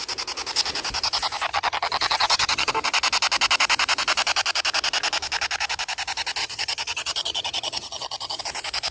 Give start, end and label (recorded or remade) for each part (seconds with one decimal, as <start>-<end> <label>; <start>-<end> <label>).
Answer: 0.0-1.5 recorded; 1.5-2.7 remade; 2.7-6.4 recorded; 6.4-8.4 remade; 8.4-8.9 recorded